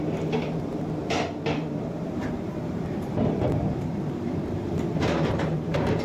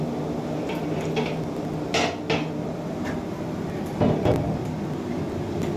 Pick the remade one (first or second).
first